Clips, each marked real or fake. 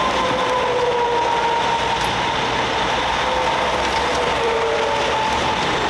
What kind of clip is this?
real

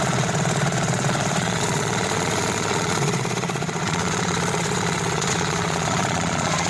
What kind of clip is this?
fake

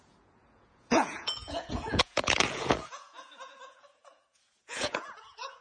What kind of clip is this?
fake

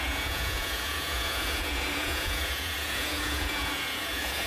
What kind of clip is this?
fake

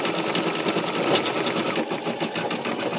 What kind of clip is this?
real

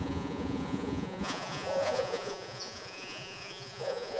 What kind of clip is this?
fake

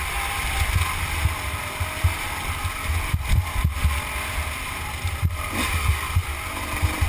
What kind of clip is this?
real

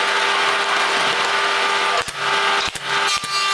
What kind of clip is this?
real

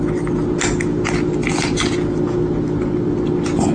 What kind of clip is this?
real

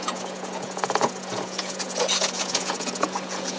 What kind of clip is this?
fake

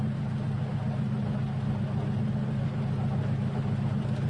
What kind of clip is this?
real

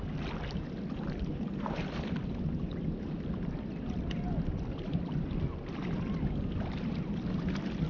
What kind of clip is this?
real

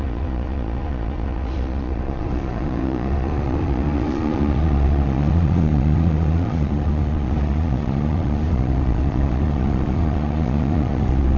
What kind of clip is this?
fake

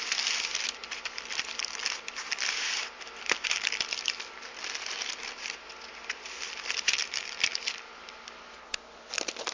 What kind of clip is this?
real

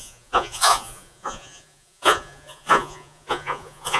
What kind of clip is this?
fake